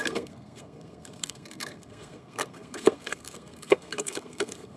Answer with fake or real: fake